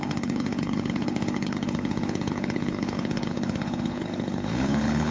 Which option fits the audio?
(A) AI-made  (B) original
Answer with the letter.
A